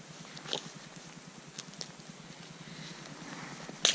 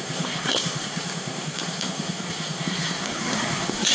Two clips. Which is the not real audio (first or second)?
second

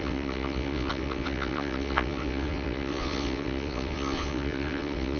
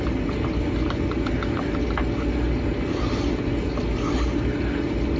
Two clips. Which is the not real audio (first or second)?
first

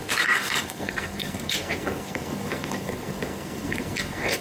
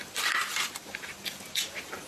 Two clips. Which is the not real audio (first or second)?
first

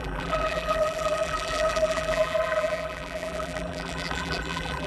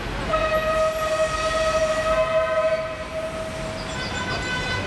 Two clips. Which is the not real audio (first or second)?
first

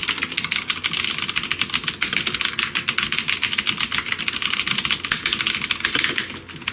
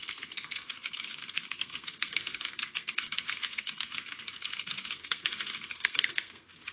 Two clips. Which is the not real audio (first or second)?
second